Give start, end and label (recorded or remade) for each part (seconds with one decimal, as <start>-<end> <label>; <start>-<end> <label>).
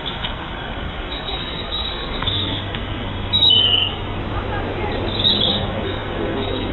0.0-4.2 remade; 4.2-5.5 recorded; 5.5-6.7 remade